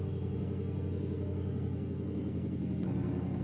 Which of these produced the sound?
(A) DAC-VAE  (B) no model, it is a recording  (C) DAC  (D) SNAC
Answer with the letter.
D